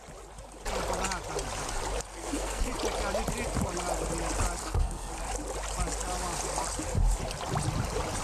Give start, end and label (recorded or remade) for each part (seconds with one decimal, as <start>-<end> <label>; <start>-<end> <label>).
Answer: 0.0-2.1 recorded; 2.1-2.7 remade; 2.7-4.6 recorded; 4.6-5.1 remade; 5.1-8.2 recorded

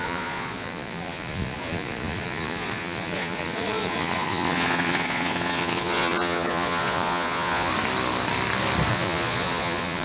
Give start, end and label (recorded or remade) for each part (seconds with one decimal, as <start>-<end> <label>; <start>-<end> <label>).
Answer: 0.0-7.7 remade; 7.7-8.9 recorded; 8.9-10.0 remade

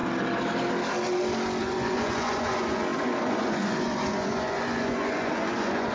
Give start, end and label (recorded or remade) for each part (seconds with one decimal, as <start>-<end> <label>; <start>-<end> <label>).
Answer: 0.0-1.6 recorded; 1.6-5.9 remade